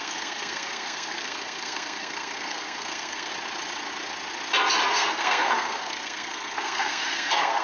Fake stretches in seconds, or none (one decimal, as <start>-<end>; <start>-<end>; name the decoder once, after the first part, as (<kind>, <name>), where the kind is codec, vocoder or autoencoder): 0.0-3.3 (codec, SNAC); 4.9-7.6